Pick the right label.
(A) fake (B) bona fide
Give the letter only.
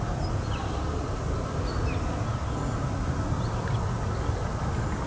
B